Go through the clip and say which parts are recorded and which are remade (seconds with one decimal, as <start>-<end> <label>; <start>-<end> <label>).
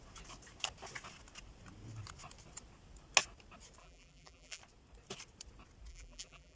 0.0-3.8 recorded; 3.8-4.6 remade; 4.6-5.9 recorded; 5.9-6.6 remade